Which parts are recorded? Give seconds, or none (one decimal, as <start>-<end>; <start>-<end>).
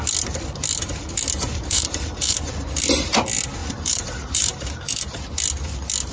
0.0-1.5; 2.5-3.6; 5.2-6.1